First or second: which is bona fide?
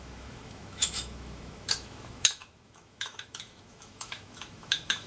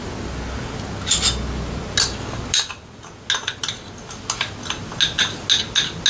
second